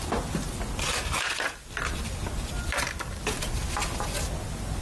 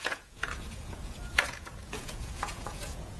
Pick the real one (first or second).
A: first